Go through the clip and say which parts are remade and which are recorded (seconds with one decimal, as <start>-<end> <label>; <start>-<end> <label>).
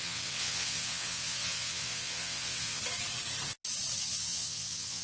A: 0.0-2.8 remade; 2.8-4.0 recorded; 4.0-5.0 remade